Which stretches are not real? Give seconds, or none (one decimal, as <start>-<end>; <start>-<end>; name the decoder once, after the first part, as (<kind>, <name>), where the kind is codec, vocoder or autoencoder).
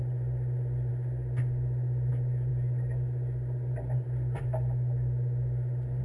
none